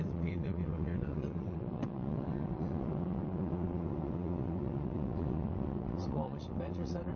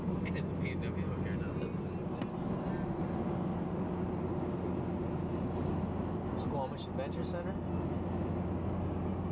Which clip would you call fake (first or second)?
first